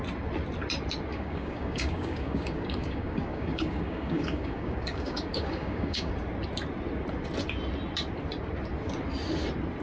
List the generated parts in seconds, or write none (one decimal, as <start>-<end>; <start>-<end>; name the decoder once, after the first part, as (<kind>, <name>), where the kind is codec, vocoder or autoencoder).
1.1-6.1 (codec, DAC)